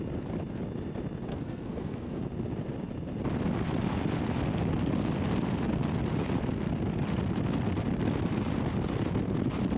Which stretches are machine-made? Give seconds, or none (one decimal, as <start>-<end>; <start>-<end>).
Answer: 1.3-2.2